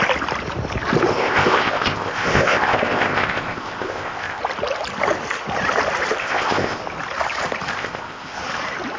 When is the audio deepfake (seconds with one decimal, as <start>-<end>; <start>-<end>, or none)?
1.1-4.4; 6.2-6.8; 7.7-8.4